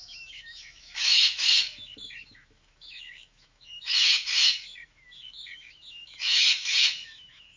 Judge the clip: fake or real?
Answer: fake